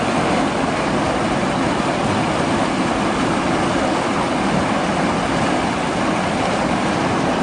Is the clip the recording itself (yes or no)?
yes